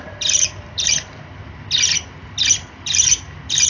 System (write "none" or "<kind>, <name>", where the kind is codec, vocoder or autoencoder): none